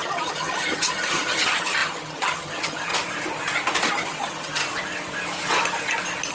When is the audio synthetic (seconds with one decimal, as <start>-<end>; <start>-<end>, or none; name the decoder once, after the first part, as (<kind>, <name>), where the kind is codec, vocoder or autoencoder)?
0.0-2.9 (vocoder, HiFi-GAN); 3.9-4.6